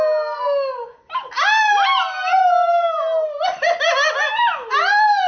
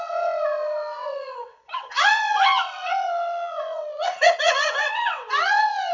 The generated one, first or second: second